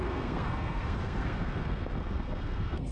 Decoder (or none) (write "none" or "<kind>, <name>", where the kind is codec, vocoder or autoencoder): codec, SNAC